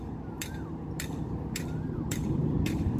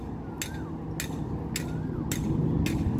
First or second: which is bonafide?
second